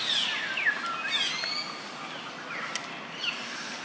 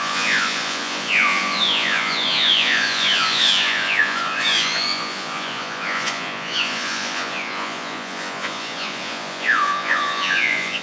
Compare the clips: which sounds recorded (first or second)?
first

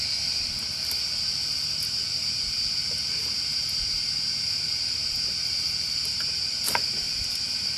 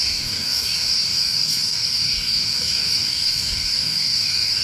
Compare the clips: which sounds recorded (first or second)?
first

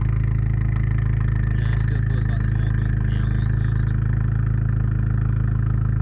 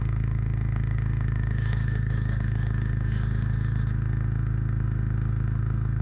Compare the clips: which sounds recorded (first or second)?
first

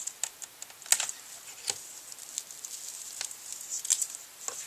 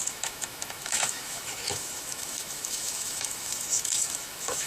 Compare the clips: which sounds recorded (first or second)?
first